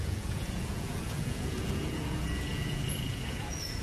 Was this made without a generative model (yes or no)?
no